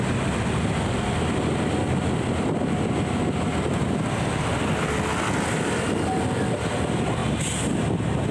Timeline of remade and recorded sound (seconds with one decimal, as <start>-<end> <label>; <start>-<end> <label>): 0.0-8.3 recorded